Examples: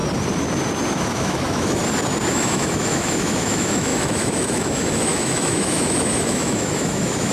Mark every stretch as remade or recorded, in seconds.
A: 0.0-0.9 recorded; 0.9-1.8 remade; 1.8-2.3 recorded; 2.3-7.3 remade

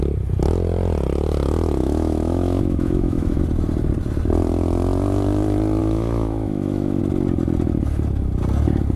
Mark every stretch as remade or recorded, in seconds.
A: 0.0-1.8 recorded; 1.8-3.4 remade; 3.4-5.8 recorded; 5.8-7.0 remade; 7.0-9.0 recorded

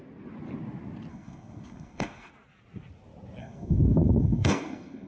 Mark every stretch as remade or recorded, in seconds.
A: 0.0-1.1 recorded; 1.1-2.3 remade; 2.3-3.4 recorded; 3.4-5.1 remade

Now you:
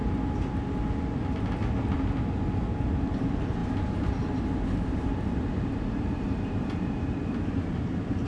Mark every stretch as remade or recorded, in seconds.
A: 0.0-2.8 recorded; 2.8-8.3 remade

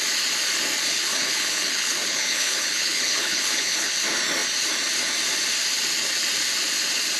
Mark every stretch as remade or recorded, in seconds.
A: 0.0-0.9 recorded; 0.9-3.9 remade; 3.9-7.2 recorded

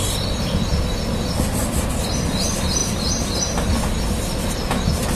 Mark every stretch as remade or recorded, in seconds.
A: 0.0-0.7 remade; 0.7-1.6 recorded; 1.6-5.2 remade

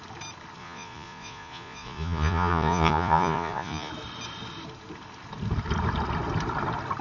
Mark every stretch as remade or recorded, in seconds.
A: 0.0-0.6 recorded; 0.6-3.9 remade; 3.9-7.0 recorded

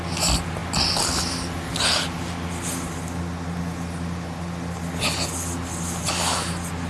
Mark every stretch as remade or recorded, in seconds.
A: 0.0-6.9 recorded